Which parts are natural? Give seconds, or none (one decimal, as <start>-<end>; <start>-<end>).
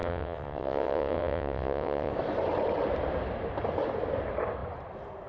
2.1-5.3